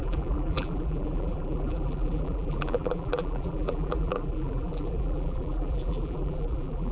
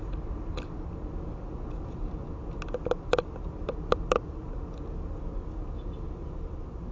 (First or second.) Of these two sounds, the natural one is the second